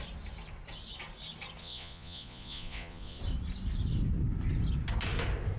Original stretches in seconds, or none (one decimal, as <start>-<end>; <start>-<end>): 0.0-1.6; 3.2-5.6